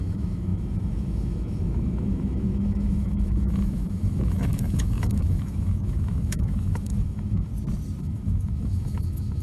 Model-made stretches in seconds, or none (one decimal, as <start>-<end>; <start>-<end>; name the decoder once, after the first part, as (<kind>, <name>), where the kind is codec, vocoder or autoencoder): 0.0-7.5 (autoencoder, DAC-VAE); 8.0-9.4